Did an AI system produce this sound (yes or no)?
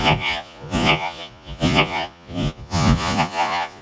yes